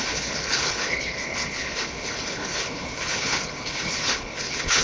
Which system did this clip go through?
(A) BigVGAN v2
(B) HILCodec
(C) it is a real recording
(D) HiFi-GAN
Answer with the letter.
B